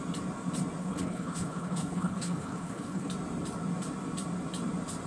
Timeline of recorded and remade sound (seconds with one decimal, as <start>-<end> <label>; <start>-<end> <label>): 0.0-0.8 recorded; 0.8-3.1 remade; 3.1-5.1 recorded